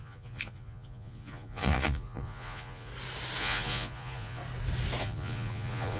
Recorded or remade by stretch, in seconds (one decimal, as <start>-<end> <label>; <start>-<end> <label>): 0.0-2.9 remade; 2.9-3.4 recorded; 3.4-4.4 remade; 4.4-5.0 recorded; 5.0-6.0 remade